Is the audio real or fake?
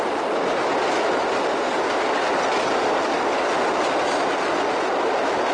real